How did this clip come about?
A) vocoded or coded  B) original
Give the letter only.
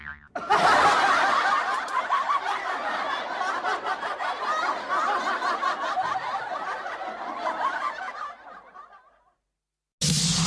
B